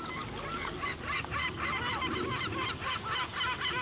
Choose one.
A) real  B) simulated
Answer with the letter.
A